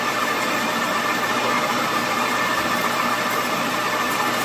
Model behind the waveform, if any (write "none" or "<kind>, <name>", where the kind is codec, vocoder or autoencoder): vocoder, BigVGAN v2